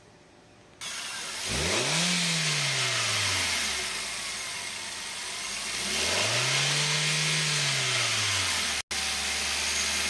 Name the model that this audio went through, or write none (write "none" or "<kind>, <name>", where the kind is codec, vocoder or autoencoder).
none